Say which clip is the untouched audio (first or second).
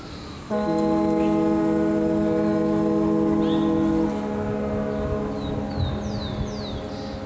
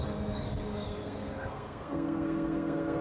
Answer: first